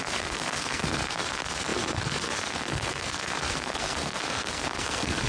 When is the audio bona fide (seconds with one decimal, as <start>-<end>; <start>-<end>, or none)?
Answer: none

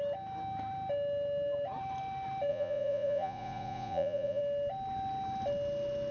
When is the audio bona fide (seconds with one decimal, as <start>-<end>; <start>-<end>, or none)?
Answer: 0.0-2.5; 4.4-6.1

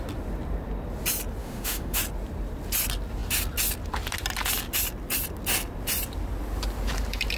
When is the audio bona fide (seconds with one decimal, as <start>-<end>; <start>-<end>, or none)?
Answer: 0.0-1.4; 2.0-7.4

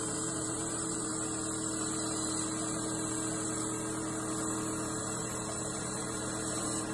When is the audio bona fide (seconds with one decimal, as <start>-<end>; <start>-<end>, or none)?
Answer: 1.1-5.0

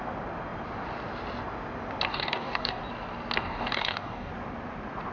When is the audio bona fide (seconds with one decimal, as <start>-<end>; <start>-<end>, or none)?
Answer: 0.0-2.1; 2.8-3.4; 4.3-5.1